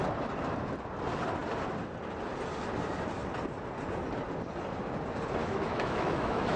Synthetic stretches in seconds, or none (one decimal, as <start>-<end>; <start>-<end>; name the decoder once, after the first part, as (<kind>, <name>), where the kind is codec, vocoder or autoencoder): 5.4-6.6 (autoencoder, DAC-VAE)